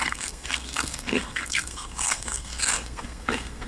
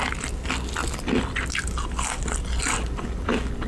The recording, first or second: second